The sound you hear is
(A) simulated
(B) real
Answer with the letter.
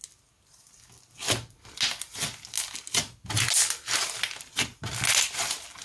B